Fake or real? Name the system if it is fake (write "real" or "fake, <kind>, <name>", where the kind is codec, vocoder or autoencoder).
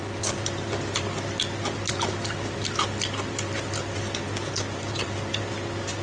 real